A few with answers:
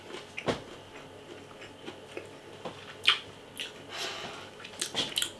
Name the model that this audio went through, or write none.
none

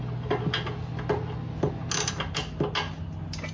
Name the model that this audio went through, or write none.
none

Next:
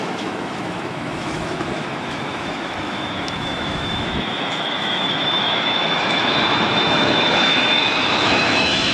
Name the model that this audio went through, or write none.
autoencoder, DAC-VAE